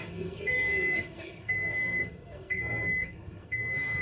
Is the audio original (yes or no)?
no